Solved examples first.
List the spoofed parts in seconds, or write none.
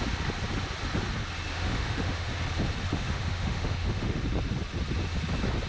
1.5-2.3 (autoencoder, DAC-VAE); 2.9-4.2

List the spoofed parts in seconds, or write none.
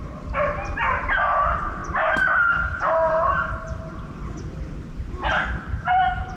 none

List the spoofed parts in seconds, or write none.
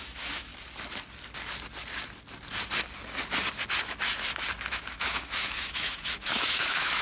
0.0-0.5 (autoencoder, DAC-VAE); 4.7-7.0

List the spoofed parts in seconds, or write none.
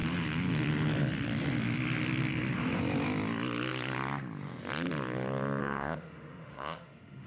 5.6-7.3 (autoencoder, DAC-VAE)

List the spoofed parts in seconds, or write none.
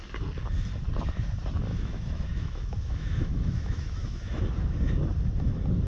1.7-4.4 (autoencoder, DAC-VAE)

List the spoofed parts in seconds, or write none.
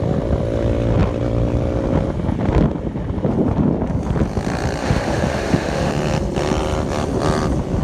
4.8-5.9 (autoencoder, DAC-VAE)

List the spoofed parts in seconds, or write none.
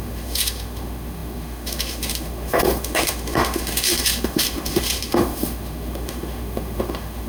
0.0-7.3 (autoencoder, DAC-VAE)